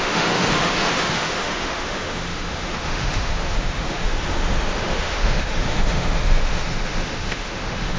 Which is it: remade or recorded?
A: remade